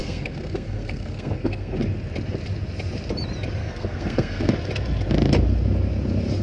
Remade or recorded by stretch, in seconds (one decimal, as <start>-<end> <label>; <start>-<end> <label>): 0.0-1.7 remade; 1.7-3.6 recorded; 3.6-4.5 remade; 4.5-6.4 recorded